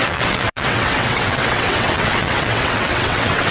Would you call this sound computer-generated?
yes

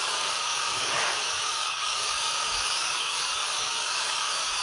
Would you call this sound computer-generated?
yes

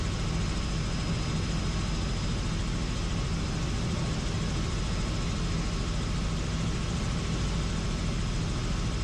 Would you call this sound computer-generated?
no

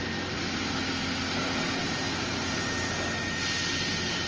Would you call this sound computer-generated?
no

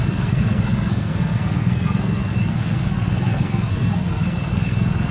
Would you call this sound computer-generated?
yes